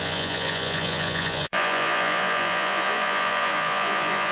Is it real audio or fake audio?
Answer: fake